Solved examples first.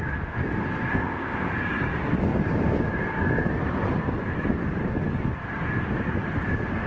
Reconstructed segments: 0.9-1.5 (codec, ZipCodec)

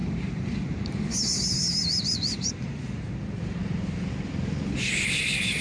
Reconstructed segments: 0.0-3.0 (vocoder, BigVGAN v2)

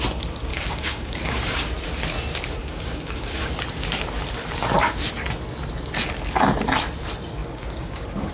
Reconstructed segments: 0.5-1.7 (codec, DAC); 2.6-3.5; 7.4-8.3

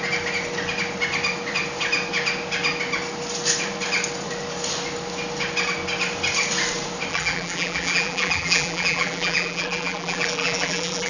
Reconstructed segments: 7.1-11.1 (vocoder, BigVGAN v2)

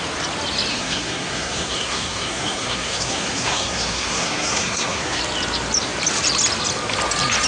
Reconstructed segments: 0.7-5.2 (codec, SNAC)